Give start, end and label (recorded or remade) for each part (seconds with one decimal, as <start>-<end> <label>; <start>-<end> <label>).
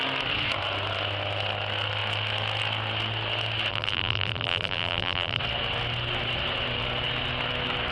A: 0.0-3.7 recorded; 3.7-5.4 remade; 5.4-7.9 recorded